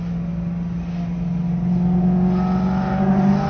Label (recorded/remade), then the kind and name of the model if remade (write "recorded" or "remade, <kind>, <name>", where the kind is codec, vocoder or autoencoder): recorded